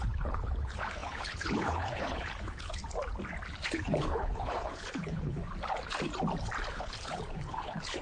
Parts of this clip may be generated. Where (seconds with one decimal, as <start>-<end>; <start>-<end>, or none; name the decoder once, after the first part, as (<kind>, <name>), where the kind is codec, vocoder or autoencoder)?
0.0-2.8 (codec, HILCodec); 3.6-5.4; 6.7-8.0